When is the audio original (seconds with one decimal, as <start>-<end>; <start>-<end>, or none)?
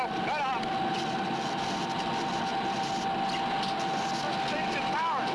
0.0-5.3